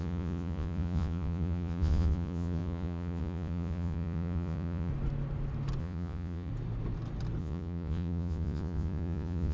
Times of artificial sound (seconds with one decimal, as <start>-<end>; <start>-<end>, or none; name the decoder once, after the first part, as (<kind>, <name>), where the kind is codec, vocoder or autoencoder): 0.0-4.9 (vocoder, Vocos); 5.8-6.5; 7.4-9.5